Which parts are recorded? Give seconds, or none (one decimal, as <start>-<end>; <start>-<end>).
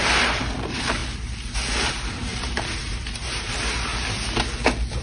1.0-1.9; 3.9-5.0